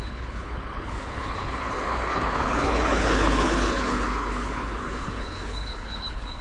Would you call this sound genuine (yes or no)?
no